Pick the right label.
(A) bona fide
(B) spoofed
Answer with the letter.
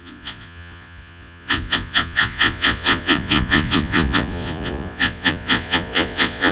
B